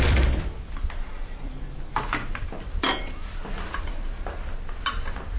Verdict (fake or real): fake